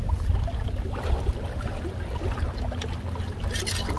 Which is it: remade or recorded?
recorded